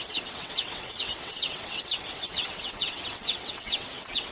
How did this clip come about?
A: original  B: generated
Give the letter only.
B